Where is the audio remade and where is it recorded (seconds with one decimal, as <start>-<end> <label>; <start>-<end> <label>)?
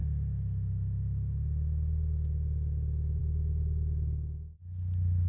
0.0-5.3 recorded